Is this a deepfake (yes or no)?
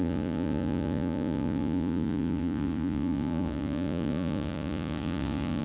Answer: yes